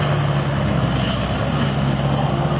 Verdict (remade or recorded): recorded